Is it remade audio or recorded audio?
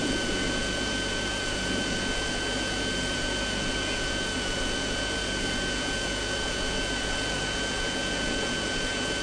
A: remade